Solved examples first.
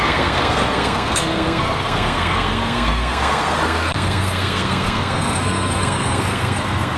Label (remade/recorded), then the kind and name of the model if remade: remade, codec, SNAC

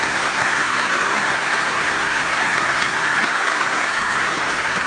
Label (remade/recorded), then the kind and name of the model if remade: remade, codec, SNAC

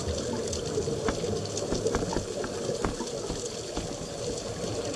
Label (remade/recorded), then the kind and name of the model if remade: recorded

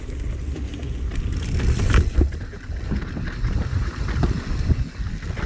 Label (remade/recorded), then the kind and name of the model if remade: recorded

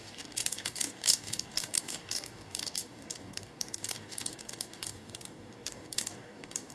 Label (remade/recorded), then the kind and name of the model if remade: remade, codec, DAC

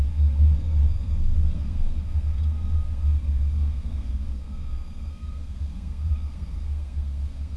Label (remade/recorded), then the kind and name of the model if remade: remade, codec, SNAC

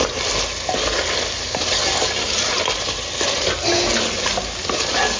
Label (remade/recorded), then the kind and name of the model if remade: recorded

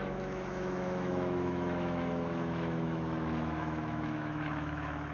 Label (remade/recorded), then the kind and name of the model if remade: remade, autoencoder, DAC-VAE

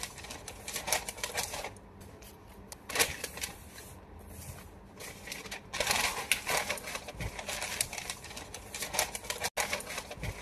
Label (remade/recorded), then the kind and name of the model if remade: recorded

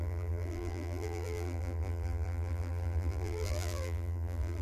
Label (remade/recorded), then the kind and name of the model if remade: remade, vocoder, BigVGAN v2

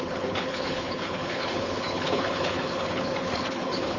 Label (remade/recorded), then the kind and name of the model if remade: remade, codec, HILCodec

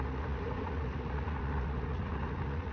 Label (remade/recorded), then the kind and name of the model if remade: remade, vocoder, Vocos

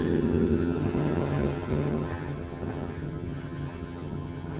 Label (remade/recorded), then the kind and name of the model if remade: remade, vocoder, HiFi-GAN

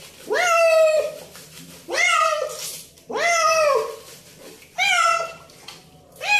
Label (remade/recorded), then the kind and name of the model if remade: recorded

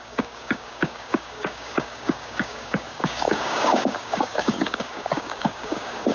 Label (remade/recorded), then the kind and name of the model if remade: remade, codec, DAC